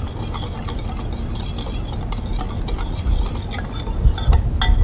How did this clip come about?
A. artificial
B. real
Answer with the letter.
B